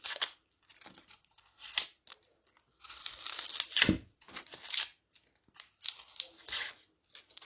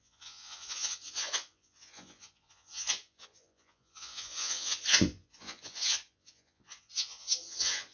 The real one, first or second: first